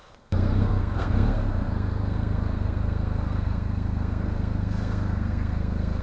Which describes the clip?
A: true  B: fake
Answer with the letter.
B